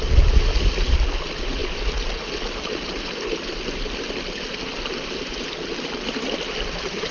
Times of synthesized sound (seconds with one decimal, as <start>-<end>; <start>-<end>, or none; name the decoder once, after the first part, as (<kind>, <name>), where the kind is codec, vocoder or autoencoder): none